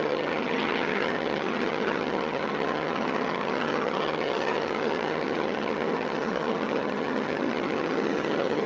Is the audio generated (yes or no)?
yes